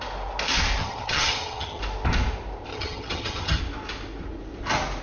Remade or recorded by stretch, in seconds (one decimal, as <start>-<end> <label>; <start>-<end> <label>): 0.0-0.8 recorded; 0.8-1.8 remade; 1.8-2.7 recorded; 2.7-3.6 remade; 3.6-5.0 recorded